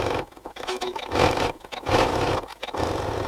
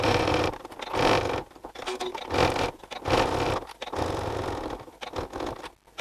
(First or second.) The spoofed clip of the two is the first